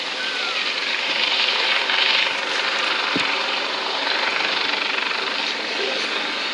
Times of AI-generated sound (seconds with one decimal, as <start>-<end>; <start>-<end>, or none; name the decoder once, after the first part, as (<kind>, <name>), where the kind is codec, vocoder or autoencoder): 0.0-1.8 (vocoder, BigVGAN v2); 2.8-4.3; 5.7-6.5